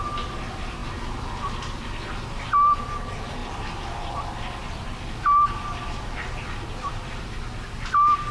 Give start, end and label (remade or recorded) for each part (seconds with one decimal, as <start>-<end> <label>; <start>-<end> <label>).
0.0-8.3 recorded